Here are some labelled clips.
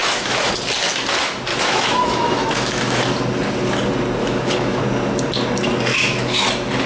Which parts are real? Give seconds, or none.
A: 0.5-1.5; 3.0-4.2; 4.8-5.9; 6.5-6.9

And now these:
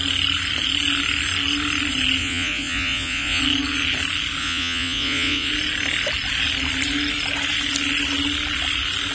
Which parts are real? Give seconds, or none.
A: 0.0-2.2; 3.4-4.4; 5.5-9.1

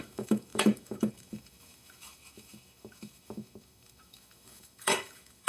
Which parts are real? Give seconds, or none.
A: none